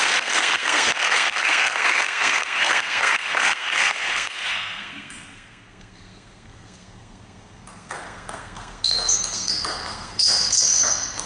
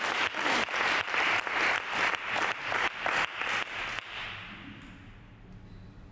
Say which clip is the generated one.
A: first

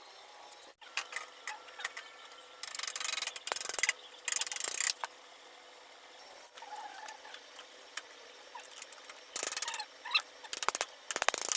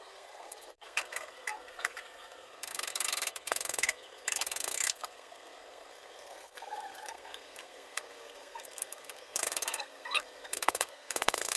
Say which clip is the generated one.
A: second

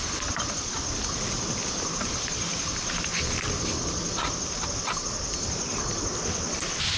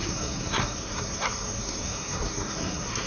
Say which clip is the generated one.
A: second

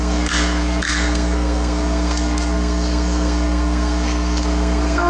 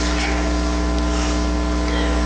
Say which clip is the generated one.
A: first